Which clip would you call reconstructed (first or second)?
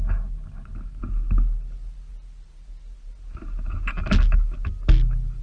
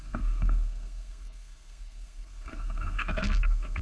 second